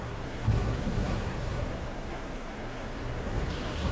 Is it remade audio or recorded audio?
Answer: remade